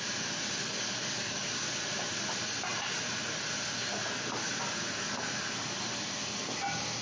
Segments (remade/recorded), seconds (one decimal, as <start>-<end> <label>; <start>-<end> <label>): 0.0-0.6 recorded; 0.6-1.5 remade; 1.5-7.0 recorded